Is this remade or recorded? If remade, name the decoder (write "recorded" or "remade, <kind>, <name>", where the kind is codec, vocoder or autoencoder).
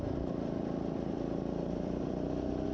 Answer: remade, vocoder, BigVGAN v2